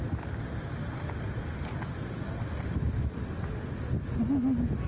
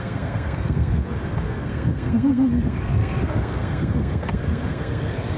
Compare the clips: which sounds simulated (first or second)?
second